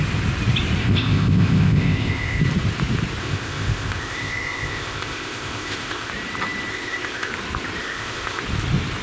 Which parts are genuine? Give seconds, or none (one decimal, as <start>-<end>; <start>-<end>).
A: 0.0-0.8; 2.4-3.2; 6.1-6.7; 7.3-7.8; 8.4-9.0